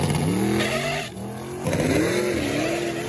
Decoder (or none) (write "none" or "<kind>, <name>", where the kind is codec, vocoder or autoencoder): none